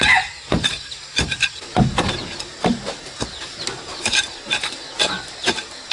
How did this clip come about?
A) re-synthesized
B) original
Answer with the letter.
B